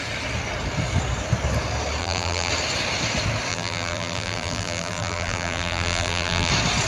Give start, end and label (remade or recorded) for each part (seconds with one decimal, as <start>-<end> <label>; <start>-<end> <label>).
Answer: 0.0-2.0 recorded; 2.0-2.5 remade; 2.5-3.5 recorded; 3.5-6.5 remade; 6.5-6.9 recorded